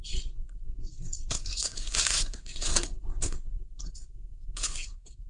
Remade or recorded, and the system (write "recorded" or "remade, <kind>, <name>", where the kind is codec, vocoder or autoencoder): remade, codec, SNAC